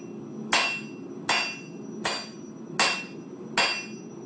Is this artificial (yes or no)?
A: no